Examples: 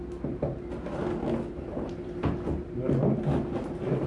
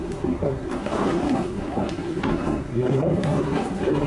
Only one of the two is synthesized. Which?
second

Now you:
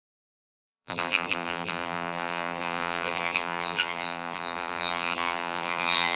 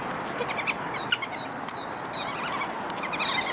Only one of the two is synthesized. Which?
first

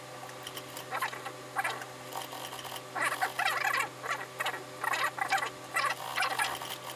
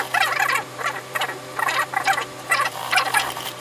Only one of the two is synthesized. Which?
second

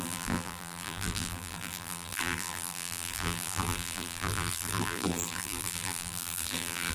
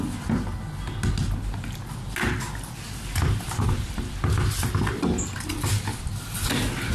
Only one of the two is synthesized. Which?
first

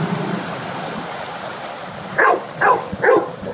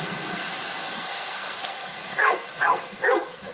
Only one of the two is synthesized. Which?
second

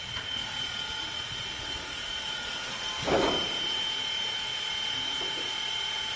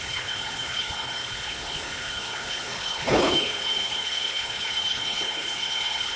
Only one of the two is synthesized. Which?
second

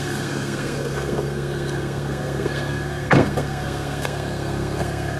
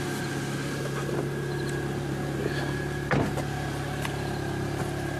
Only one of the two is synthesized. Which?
first